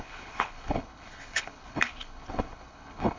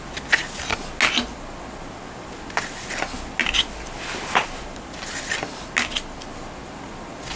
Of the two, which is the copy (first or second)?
first